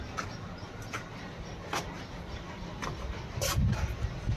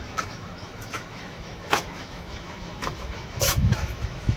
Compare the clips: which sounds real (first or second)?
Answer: first